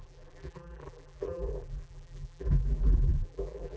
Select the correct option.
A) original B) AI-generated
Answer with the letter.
B